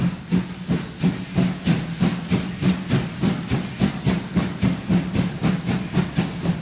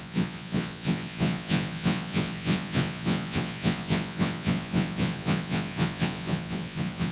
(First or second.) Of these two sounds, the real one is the first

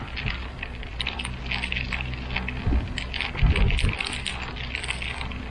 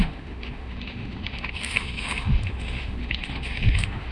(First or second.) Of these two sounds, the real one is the first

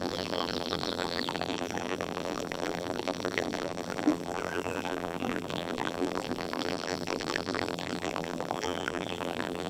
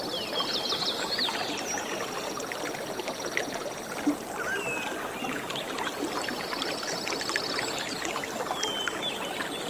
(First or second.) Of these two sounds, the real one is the second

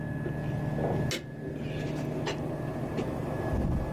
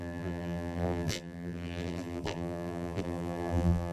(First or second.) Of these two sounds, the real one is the first